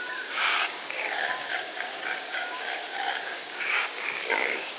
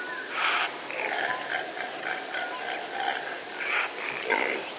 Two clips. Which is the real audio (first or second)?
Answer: second